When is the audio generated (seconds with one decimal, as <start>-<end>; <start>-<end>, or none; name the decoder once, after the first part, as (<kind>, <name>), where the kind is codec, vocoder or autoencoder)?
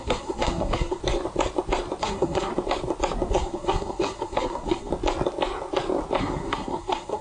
0.0-1.0 (codec, SNAC); 2.0-2.5; 3.3-4.9; 6.2-7.2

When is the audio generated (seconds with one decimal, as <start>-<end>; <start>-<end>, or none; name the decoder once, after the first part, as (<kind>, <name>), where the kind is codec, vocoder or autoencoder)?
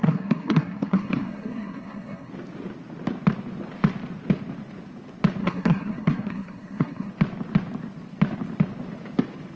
0.0-2.3 (codec, SNAC); 5.4-7.1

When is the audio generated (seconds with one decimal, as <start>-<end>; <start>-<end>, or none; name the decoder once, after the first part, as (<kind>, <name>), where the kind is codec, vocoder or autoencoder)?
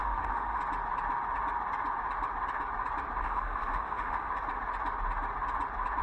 0.0-0.6 (autoencoder, DAC-VAE); 3.2-4.3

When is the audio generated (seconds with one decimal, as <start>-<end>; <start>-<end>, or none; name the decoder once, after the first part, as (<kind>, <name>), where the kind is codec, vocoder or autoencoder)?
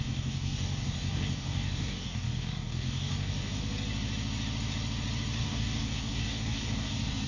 0.0-3.6 (codec, DAC); 5.4-7.3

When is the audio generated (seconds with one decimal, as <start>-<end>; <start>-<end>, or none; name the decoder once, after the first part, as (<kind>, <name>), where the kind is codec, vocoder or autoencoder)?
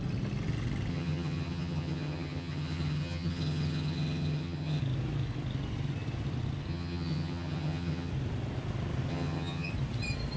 0.9-4.8 (vocoder, HiFi-GAN); 6.7-8.1; 9.1-9.7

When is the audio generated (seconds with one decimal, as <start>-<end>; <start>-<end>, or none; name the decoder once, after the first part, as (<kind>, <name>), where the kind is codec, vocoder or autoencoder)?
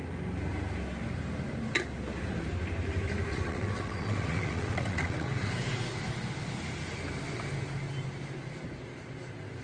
3.3-5.5 (vocoder, WaveNeXt)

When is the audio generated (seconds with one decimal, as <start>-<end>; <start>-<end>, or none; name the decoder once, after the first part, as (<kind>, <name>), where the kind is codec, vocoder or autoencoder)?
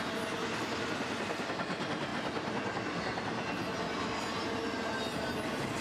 none